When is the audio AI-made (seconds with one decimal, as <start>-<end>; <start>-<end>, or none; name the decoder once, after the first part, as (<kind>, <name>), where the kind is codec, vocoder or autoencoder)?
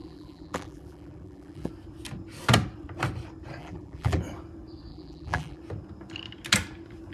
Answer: 0.0-1.7 (vocoder, BigVGAN v2); 3.6-4.2; 4.9-5.6